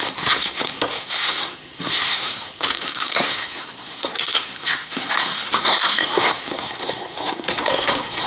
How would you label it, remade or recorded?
remade